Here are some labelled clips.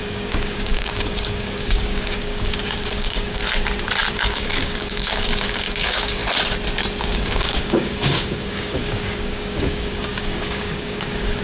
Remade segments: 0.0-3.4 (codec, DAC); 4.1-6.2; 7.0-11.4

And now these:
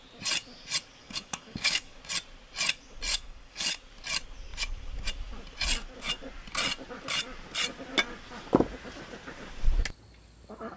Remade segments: 1.0-2.0 (codec, DAC); 3.1-3.7

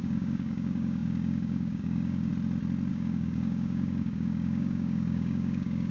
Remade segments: 0.0-2.3 (codec, DAC); 2.9-5.9

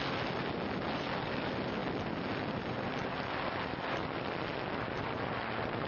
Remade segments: none

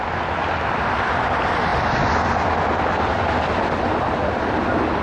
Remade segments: none

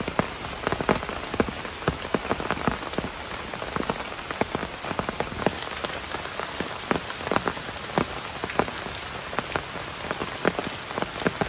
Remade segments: none

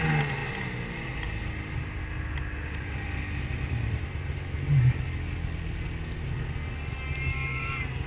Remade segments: 7.3-8.1 (codec, DAC)

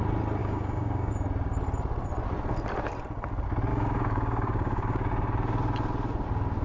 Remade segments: 0.4-1.1 (codec, DAC); 3.7-5.1